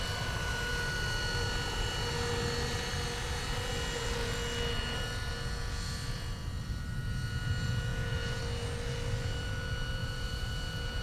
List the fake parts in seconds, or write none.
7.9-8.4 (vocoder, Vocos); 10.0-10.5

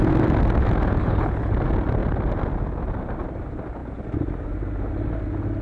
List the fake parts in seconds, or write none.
1.0-1.5 (codec, HILCodec)

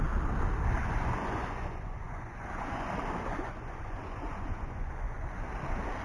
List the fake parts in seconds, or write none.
0.8-2.9 (vocoder, Vocos); 3.3-5.5

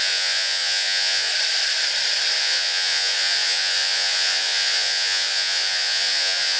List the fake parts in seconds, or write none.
0.0-1.3 (vocoder, Vocos); 2.4-6.6

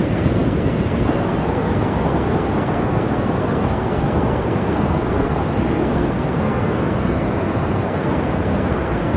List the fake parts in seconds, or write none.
0.0-9.2 (codec, SNAC)

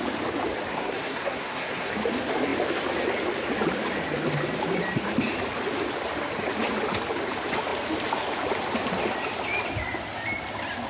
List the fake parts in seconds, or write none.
0.7-1.9 (codec, SNAC)

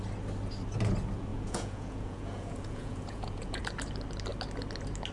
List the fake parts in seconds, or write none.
1.3-3.6 (vocoder, Vocos)

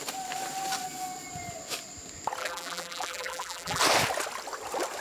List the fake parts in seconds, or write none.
2.4-3.8 (vocoder, BigVGAN v2)